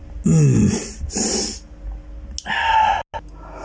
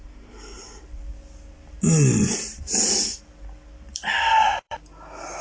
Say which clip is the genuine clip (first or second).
first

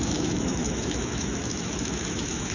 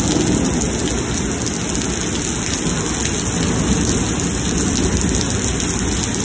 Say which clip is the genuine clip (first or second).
second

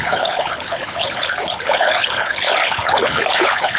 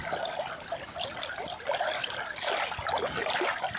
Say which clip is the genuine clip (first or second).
second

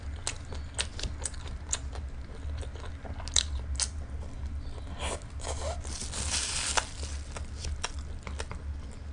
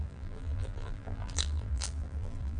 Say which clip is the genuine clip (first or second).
first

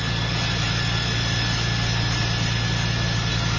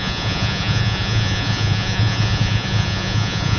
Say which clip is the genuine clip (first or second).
first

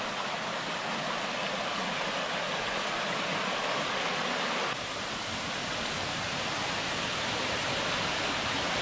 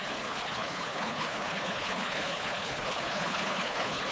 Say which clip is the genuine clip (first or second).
first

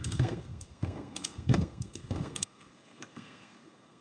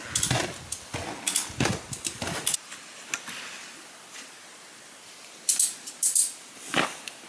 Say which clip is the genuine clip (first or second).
second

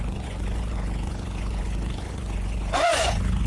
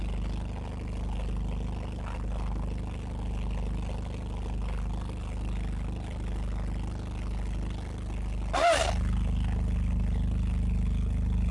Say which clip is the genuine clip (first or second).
second